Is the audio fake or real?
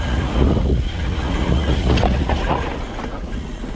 fake